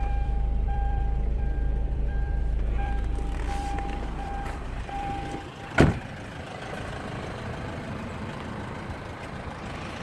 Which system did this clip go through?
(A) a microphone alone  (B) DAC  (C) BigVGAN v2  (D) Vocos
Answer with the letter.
C